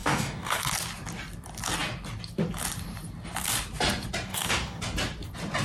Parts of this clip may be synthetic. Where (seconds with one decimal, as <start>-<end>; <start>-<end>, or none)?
0.0-0.6; 4.3-4.8